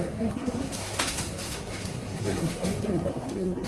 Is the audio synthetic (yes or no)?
yes